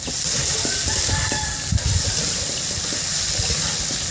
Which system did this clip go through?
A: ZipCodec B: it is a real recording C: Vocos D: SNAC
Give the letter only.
B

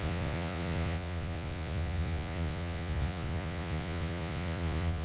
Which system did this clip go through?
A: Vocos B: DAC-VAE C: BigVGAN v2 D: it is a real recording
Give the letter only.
A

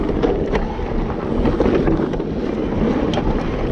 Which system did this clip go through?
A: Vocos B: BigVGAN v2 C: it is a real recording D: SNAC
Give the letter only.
C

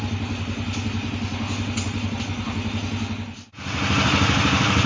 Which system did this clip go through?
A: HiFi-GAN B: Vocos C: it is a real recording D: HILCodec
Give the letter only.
C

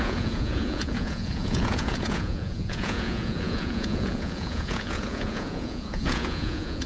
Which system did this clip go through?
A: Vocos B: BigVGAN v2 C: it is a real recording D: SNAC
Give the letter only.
A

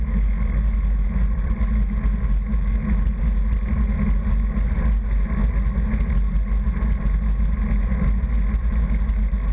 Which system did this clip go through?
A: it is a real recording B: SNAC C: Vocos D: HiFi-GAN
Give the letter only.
A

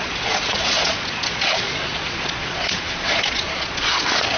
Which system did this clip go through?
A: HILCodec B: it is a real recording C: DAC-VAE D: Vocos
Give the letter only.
D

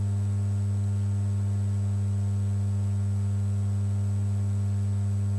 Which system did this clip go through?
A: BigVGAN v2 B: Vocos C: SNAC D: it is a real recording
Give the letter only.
D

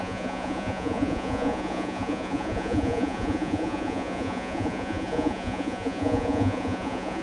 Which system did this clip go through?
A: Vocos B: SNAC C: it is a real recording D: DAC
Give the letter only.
A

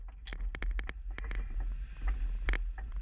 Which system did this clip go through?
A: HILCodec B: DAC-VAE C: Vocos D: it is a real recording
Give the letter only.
D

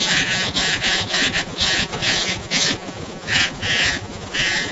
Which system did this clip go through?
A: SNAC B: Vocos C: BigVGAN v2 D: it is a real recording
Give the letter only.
B